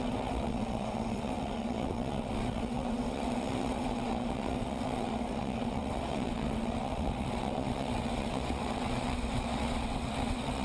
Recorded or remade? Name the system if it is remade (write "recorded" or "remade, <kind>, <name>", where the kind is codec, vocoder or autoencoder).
remade, vocoder, WaveNeXt